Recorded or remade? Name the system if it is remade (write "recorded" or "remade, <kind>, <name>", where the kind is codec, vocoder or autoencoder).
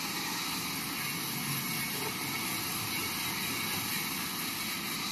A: recorded